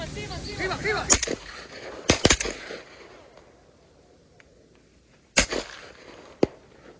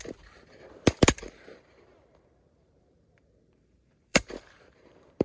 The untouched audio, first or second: first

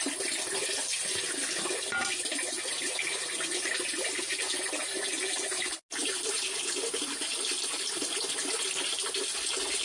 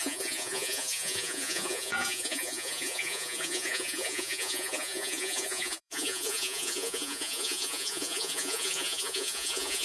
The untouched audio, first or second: first